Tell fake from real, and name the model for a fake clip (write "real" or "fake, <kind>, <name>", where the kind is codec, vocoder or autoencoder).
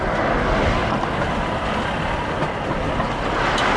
real